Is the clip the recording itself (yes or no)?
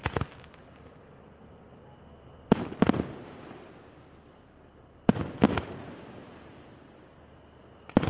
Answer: yes